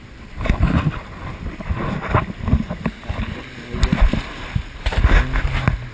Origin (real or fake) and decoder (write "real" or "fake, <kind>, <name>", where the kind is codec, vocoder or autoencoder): real